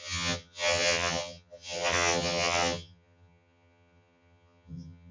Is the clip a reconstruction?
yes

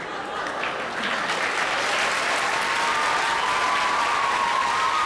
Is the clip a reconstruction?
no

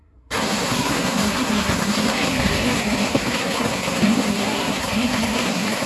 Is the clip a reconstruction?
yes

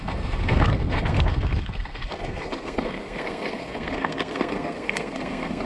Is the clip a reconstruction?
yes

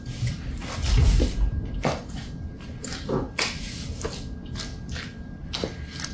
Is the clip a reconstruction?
no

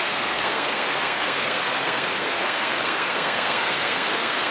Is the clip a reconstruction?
yes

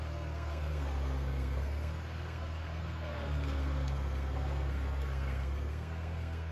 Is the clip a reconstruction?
yes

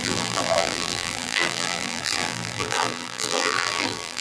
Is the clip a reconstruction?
yes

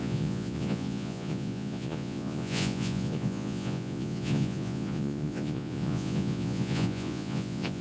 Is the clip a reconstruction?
yes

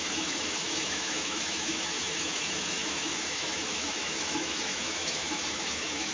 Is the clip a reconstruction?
yes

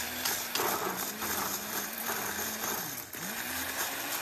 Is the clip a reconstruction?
yes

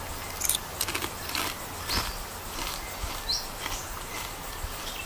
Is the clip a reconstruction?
no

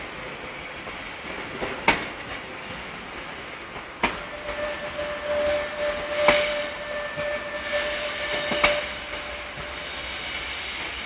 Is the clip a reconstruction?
no